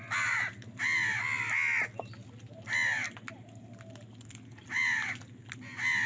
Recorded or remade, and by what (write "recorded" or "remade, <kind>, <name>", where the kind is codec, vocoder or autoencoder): recorded